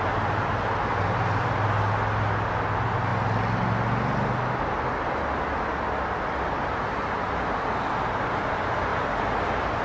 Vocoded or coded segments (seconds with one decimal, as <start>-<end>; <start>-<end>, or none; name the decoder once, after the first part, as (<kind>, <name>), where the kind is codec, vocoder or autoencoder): none